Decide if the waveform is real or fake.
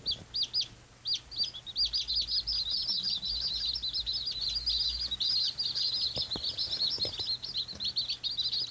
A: real